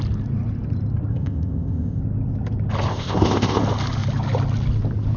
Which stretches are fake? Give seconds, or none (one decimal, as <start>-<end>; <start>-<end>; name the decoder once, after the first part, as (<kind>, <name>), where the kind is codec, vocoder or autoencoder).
1.1-2.0 (codec, ZipCodec); 2.9-3.6